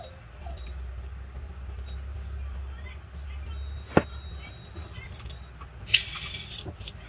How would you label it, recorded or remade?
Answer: recorded